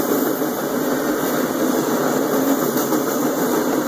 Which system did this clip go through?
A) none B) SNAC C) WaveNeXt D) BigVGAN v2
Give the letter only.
A